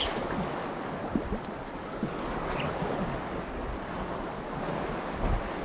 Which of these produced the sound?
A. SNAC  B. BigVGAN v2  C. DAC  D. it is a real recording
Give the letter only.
D